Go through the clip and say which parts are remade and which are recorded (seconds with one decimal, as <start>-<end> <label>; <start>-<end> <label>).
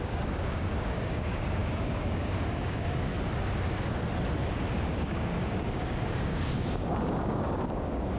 0.0-3.1 remade; 3.1-4.7 recorded; 4.7-8.2 remade